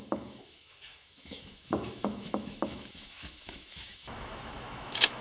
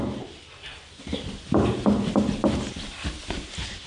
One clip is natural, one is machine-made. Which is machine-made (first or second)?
first